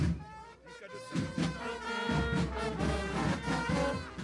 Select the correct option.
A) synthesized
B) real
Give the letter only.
B